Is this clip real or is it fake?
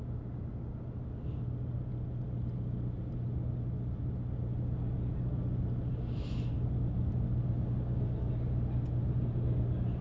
real